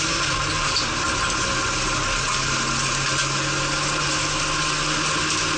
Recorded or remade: recorded